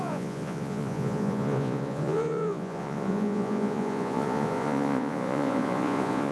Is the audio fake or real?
fake